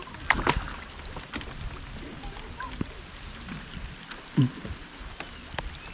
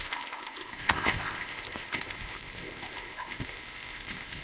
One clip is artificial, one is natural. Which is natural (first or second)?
first